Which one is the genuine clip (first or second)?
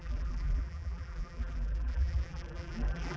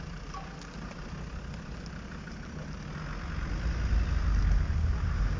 second